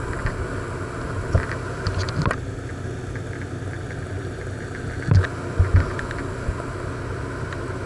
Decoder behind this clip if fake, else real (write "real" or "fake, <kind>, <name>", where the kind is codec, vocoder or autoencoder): real